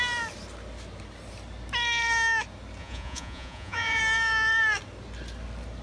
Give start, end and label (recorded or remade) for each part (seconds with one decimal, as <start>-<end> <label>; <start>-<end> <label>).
0.0-2.8 recorded; 2.8-4.0 remade; 4.0-5.8 recorded